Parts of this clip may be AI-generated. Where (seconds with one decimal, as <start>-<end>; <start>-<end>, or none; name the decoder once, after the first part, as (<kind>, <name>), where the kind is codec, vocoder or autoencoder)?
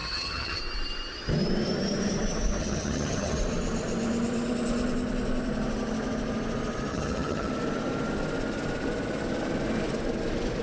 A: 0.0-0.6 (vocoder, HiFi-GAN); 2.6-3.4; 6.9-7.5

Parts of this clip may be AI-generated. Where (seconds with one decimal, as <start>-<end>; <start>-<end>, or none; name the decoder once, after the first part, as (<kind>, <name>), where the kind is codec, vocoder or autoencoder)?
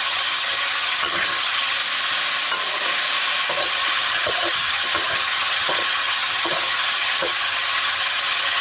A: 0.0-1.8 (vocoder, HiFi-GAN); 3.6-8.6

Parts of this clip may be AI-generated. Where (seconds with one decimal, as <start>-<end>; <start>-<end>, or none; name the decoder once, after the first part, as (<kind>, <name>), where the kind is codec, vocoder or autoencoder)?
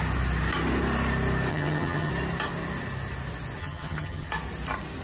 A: 1.5-2.1 (vocoder, HiFi-GAN); 3.6-4.3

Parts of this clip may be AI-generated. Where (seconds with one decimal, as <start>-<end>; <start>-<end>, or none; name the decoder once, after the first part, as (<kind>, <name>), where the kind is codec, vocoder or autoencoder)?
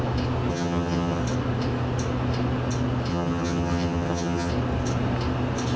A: 0.5-1.2 (vocoder, HiFi-GAN); 3.1-4.5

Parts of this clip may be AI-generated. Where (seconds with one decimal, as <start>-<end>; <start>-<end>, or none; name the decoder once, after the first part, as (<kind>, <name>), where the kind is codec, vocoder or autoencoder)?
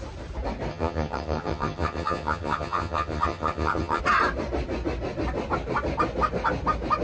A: 0.7-4.0 (vocoder, HiFi-GAN)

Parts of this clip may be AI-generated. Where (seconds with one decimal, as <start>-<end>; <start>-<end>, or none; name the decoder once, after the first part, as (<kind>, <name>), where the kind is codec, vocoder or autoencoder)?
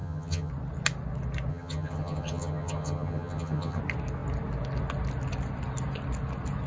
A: 0.0-0.5 (vocoder, HiFi-GAN); 1.5-3.8